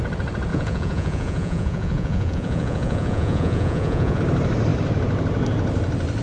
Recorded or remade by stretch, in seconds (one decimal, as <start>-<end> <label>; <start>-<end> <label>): 0.0-0.5 recorded; 0.5-4.2 remade; 4.2-6.2 recorded